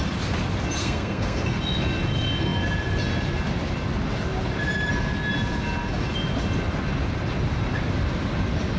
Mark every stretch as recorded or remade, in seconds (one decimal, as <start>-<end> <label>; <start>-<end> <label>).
0.0-0.8 recorded; 0.8-1.6 remade; 1.6-8.8 recorded